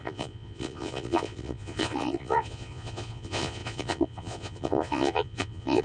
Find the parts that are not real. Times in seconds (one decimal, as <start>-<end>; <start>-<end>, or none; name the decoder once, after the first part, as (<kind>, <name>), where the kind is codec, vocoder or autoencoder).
0.0-5.8 (vocoder, Vocos)